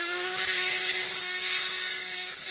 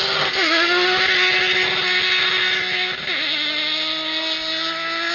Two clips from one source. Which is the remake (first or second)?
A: first